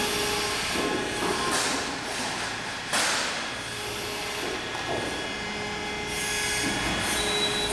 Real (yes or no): yes